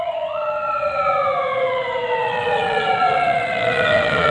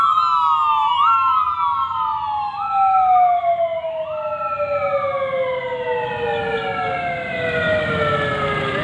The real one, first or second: second